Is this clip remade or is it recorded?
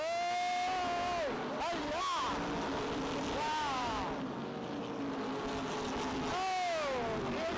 recorded